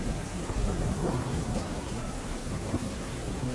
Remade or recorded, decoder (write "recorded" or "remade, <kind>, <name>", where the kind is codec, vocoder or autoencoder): remade, codec, SNAC